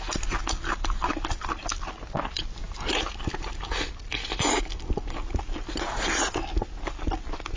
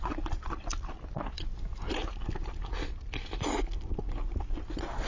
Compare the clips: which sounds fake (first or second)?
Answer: second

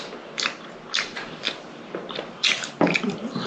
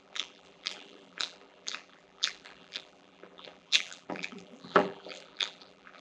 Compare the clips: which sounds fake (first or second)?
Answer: second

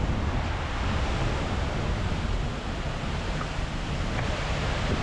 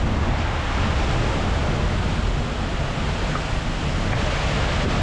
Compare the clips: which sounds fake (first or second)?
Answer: first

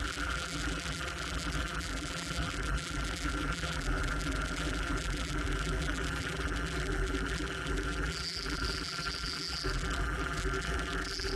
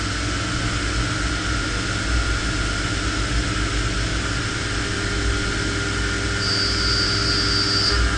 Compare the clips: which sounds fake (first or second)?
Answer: first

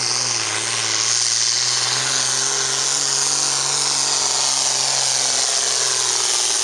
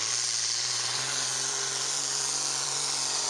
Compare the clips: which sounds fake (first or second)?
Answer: second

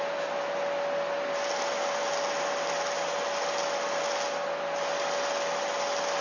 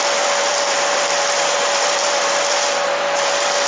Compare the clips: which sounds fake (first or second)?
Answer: second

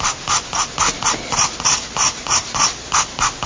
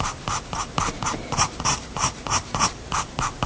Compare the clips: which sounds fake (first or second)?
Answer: second